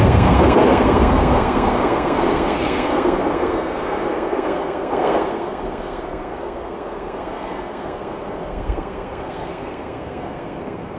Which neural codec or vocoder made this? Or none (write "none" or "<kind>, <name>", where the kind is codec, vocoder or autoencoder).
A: codec, SNAC